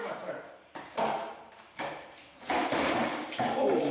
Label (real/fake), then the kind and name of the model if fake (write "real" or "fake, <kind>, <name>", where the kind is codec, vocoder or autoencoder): fake, vocoder, BigVGAN v2